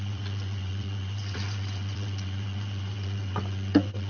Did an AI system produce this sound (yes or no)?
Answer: yes